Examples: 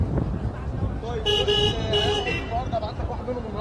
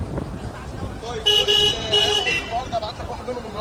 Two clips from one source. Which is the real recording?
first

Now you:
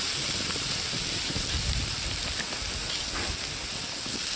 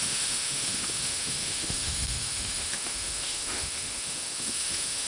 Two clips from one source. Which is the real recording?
first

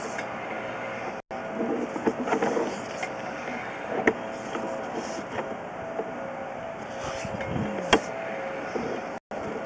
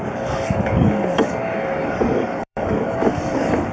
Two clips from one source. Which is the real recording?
first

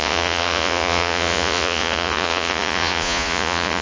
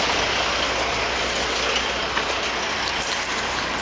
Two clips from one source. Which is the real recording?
second